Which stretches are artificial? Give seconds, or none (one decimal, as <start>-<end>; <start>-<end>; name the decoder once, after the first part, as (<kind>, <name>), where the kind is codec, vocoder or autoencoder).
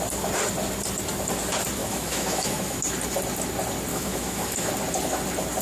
1.8-2.8 (autoencoder, DAC-VAE); 3.9-4.7